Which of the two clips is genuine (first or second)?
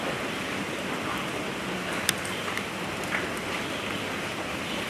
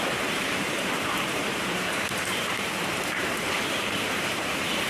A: first